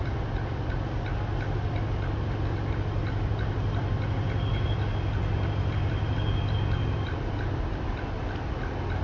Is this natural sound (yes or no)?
yes